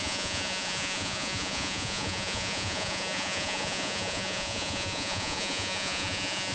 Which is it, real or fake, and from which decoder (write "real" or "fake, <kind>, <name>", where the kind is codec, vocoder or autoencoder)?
fake, vocoder, Vocos